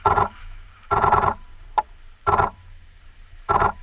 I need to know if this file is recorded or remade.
remade